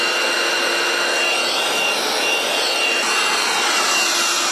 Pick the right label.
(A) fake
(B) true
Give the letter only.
B